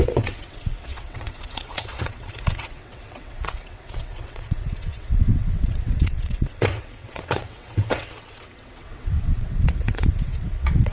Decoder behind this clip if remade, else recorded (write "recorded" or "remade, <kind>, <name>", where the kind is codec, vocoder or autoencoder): remade, vocoder, WaveNeXt